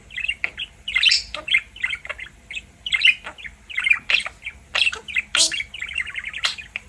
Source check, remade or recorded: recorded